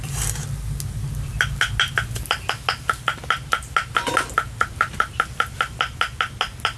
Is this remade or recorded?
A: recorded